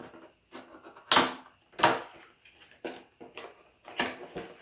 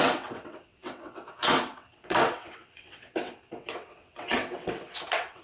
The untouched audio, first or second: first